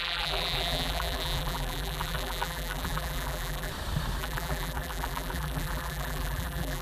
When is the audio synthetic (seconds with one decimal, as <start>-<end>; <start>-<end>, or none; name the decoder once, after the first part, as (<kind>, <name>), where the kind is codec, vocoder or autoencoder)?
0.0-3.7 (vocoder, BigVGAN v2); 4.2-6.8